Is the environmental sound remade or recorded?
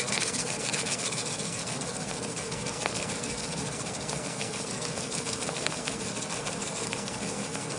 remade